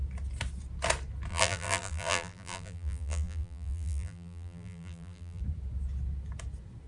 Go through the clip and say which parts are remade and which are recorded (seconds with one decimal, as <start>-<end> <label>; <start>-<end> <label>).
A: 0.0-1.3 recorded; 1.3-5.4 remade; 5.4-6.9 recorded